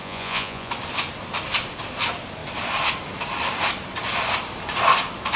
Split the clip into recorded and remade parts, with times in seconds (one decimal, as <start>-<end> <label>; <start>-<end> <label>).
0.0-0.7 remade; 0.7-5.4 recorded